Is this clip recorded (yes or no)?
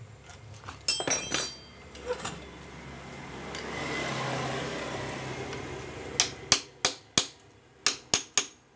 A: yes